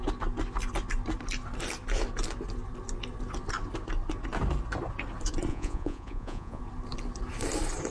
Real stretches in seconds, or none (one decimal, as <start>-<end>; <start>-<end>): 0.0-5.5; 6.6-7.9

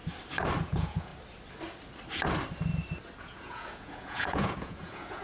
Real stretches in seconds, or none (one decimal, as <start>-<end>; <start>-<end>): 0.0-0.6; 1.1-3.2

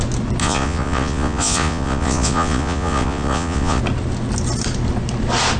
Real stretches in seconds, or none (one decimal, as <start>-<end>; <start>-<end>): 0.0-0.4; 3.8-5.6

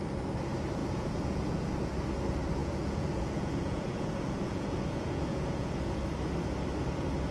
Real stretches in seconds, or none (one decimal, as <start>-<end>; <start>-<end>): 0.0-0.8; 1.9-2.6; 6.0-7.3

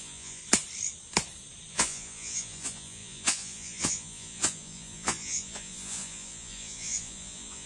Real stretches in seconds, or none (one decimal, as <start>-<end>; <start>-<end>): 0.4-1.7

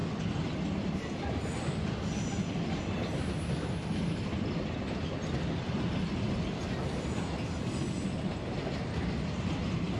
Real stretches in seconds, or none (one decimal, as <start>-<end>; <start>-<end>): 0.0-10.0

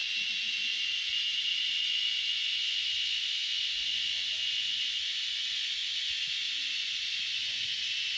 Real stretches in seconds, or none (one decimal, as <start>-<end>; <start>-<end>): 0.0-1.6